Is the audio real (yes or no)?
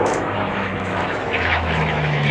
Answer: no